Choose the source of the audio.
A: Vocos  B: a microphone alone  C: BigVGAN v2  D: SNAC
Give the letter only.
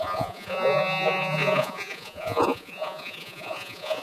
A